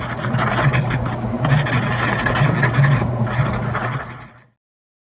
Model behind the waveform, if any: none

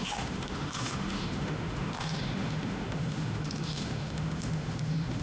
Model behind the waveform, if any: autoencoder, DAC-VAE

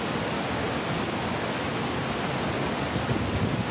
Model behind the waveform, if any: none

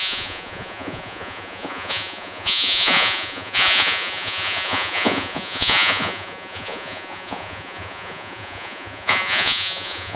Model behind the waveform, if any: vocoder, Vocos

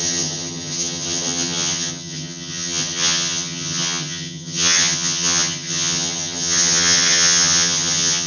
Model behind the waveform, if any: vocoder, HiFi-GAN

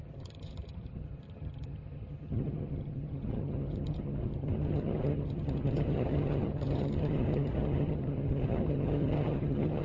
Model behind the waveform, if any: vocoder, HiFi-GAN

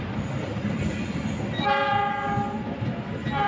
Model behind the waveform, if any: none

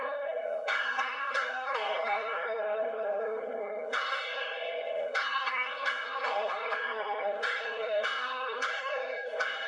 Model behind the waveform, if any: codec, SNAC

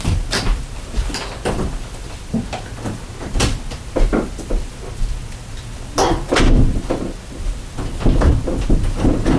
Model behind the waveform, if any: vocoder, BigVGAN v2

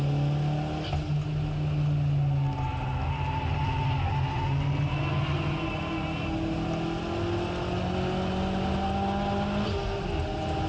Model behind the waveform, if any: none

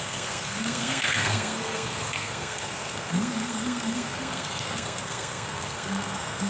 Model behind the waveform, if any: codec, SNAC